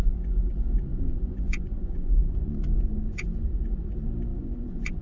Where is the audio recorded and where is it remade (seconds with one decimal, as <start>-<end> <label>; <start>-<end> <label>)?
0.0-0.9 recorded; 0.9-3.9 remade; 3.9-4.3 recorded; 4.3-5.0 remade